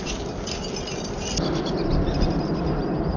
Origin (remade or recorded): recorded